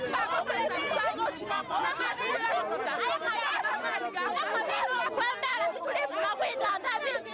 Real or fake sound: real